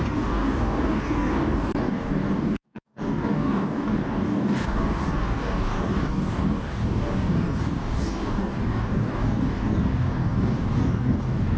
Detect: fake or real fake